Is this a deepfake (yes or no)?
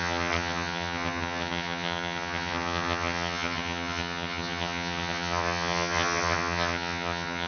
yes